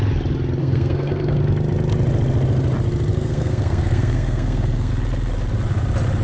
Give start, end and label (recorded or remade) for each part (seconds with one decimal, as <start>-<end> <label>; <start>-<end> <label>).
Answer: 0.0-0.6 recorded; 0.6-1.4 remade; 1.4-3.1 recorded; 3.1-4.9 remade; 4.9-6.2 recorded